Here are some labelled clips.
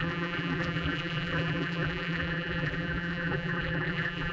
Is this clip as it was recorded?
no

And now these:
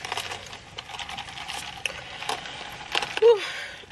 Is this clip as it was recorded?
yes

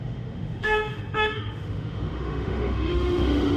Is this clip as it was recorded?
no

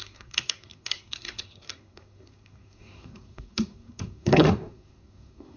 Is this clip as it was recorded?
no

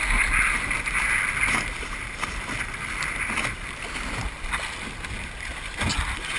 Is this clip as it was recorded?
yes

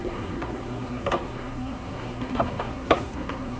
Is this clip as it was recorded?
no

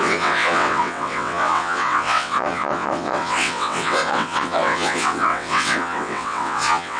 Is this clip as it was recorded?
no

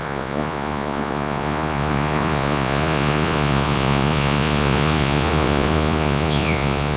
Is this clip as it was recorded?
no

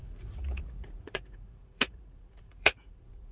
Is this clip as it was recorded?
no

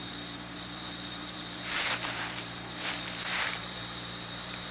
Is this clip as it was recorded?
no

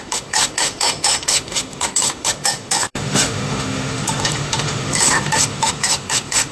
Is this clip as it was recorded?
no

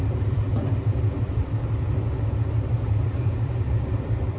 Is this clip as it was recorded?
no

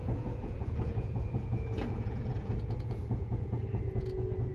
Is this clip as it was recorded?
no